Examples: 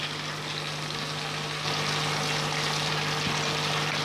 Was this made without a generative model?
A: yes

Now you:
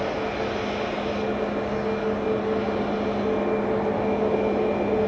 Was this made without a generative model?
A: yes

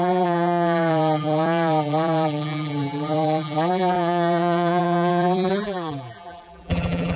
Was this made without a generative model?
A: no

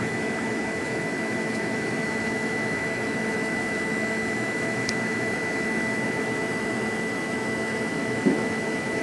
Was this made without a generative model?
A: no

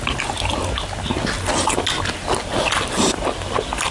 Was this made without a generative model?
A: yes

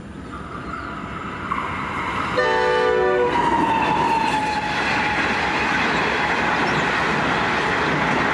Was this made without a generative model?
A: yes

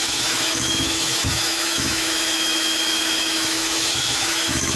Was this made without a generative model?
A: no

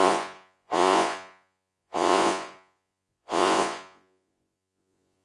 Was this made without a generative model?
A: no